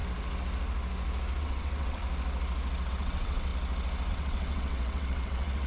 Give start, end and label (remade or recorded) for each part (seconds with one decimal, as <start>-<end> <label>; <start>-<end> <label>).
0.0-1.4 recorded; 1.4-2.0 remade; 2.0-2.9 recorded; 2.9-3.5 remade; 3.5-4.1 recorded; 4.1-5.7 remade